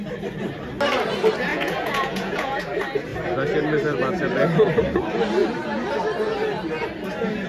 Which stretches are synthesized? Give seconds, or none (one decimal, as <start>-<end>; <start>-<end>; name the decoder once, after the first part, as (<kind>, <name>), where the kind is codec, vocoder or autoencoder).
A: 1.5-2.6 (vocoder, Vocos)